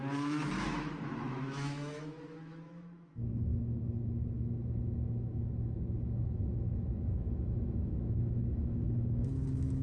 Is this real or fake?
fake